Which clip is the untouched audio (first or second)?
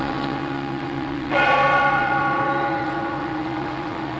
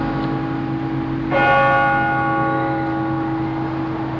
second